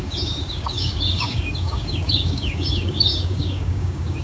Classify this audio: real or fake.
fake